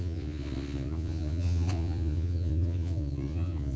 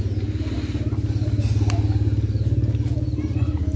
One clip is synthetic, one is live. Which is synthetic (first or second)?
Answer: first